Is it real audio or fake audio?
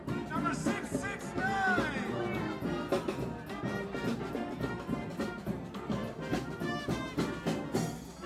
real